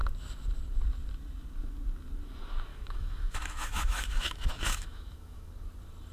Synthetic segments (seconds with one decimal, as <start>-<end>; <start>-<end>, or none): 2.7-5.5